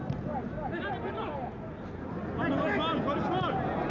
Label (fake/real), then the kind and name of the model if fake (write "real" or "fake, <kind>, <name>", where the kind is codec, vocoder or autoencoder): real